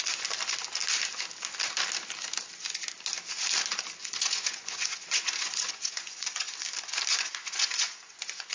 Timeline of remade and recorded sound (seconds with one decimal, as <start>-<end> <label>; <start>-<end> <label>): 0.0-4.0 recorded; 4.0-6.5 remade; 6.5-7.1 recorded; 7.1-8.5 remade